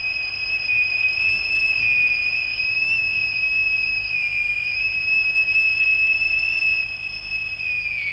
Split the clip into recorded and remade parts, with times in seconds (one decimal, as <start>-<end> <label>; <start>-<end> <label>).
0.0-2.5 recorded; 2.5-5.5 remade; 5.5-8.1 recorded